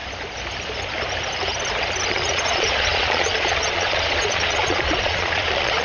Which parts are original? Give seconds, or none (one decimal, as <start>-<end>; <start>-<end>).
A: 0.0-2.1